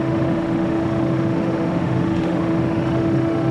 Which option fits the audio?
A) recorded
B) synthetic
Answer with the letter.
B